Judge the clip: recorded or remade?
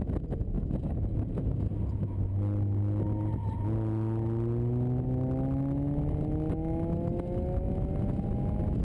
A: recorded